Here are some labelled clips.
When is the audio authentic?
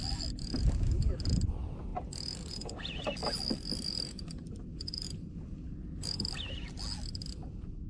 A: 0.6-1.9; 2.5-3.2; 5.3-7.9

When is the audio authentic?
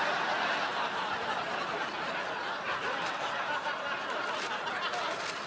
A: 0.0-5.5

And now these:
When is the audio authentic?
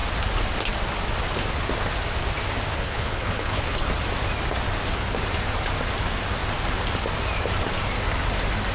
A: 0.0-2.7; 3.9-8.7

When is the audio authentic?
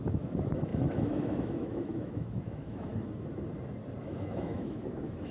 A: 2.9-4.0